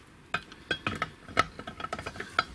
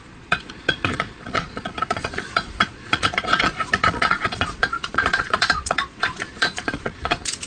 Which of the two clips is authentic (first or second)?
first